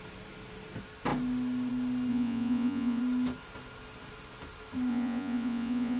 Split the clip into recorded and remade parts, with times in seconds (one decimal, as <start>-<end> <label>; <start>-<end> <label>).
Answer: 0.0-2.1 recorded; 2.1-3.0 remade; 3.0-4.9 recorded; 4.9-6.0 remade